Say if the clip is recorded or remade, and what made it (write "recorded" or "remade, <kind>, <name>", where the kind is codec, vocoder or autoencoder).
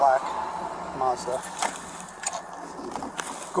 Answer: recorded